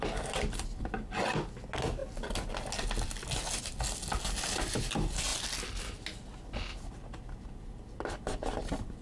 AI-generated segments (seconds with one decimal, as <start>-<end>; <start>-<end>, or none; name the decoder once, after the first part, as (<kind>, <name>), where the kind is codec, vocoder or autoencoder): none